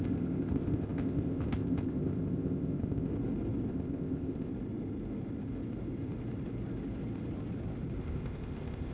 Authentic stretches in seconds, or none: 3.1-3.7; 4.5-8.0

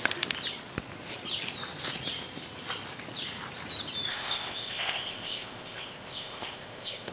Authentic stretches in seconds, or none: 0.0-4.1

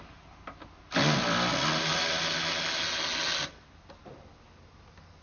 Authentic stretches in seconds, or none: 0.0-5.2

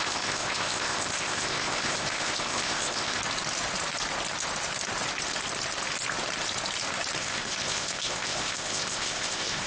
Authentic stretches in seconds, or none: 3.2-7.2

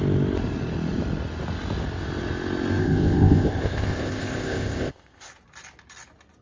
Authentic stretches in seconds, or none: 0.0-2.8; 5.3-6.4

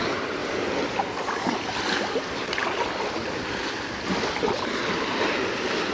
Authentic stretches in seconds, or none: 0.0-5.9

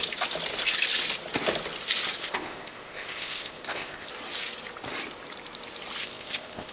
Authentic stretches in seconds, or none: 0.0-2.2; 4.1-6.0